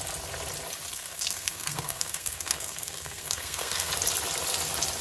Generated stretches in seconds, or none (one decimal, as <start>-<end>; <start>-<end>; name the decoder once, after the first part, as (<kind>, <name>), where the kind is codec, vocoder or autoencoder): 0.9-3.9 (codec, SNAC)